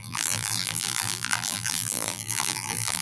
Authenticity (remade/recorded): remade